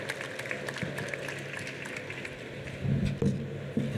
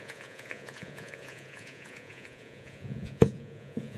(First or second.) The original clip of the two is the first